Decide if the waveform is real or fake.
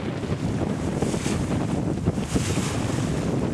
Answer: real